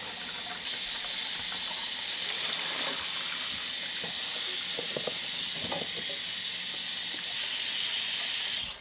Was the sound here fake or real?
real